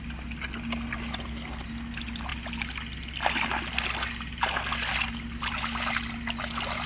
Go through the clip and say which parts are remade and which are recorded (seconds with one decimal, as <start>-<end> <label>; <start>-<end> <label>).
0.0-6.9 recorded